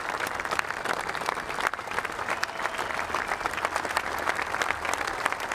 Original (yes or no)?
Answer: yes